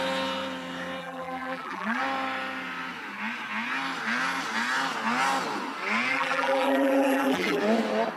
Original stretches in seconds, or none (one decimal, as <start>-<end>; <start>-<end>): 0.0-1.0; 2.0-6.1; 7.6-8.2